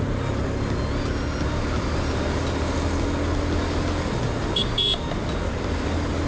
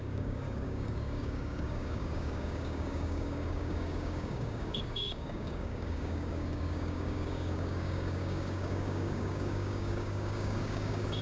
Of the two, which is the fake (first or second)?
second